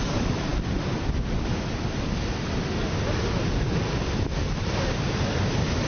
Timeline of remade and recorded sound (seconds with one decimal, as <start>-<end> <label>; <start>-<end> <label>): 0.0-5.9 recorded